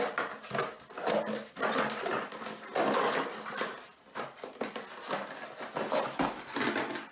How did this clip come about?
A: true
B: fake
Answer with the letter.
A